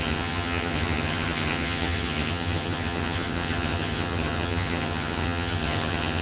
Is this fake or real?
fake